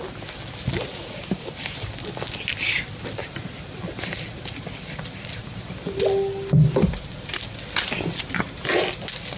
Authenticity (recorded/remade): recorded